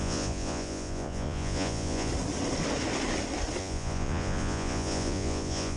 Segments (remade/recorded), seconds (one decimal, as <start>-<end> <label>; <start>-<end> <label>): 0.0-2.1 remade; 2.1-3.6 recorded; 3.6-5.8 remade